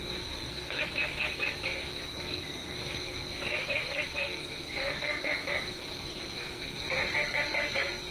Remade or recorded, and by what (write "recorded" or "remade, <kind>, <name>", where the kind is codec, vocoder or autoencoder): remade, codec, SNAC